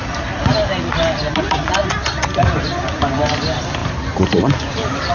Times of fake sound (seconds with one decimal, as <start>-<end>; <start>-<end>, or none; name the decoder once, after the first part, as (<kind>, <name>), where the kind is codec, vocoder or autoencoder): none